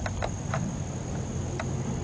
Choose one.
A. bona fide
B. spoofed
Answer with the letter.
A